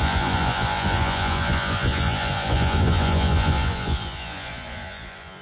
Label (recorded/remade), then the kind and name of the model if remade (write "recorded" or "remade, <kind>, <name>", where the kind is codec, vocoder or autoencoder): remade, vocoder, Vocos